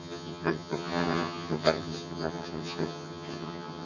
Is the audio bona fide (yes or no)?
no